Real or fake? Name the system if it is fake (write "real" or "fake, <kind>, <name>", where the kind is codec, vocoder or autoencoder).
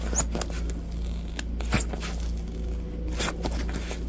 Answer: real